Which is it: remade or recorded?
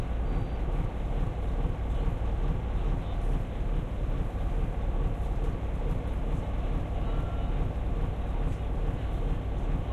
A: recorded